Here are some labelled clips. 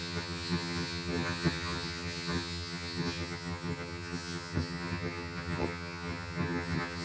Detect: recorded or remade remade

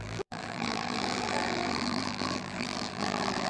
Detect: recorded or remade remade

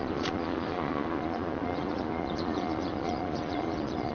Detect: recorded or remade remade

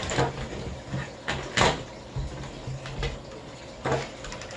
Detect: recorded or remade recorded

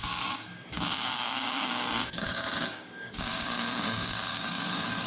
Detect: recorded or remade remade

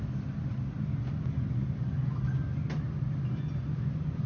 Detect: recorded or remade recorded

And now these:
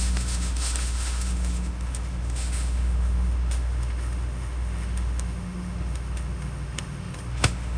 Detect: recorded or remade remade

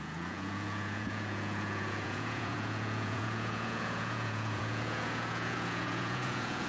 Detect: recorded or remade remade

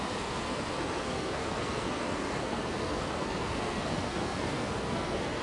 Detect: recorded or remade remade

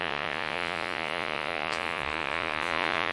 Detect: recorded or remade remade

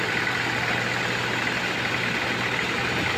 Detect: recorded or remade recorded